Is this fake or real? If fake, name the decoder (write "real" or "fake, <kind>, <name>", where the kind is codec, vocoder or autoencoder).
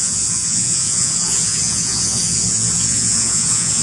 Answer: fake, vocoder, Vocos